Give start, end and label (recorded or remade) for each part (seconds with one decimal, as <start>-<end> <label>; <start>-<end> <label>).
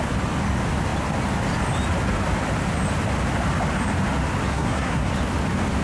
0.0-4.5 recorded; 4.5-5.1 remade; 5.1-5.8 recorded